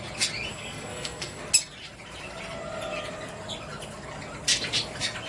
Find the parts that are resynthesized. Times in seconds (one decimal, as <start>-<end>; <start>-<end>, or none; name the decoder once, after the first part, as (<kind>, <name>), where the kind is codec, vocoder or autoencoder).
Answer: 0.5-1.4 (codec, SNAC)